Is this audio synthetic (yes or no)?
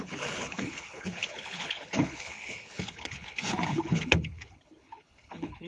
yes